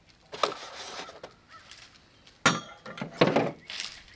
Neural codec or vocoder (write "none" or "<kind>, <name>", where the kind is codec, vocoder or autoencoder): none